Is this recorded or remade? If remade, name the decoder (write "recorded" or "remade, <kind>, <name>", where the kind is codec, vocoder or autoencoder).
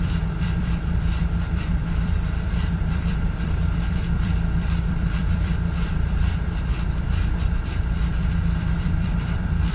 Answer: remade, vocoder, BigVGAN v2